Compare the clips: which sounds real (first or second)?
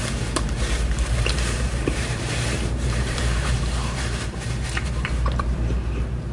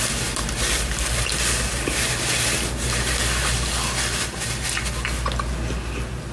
second